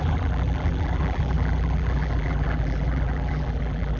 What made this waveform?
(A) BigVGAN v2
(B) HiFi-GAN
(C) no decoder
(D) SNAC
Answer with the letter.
A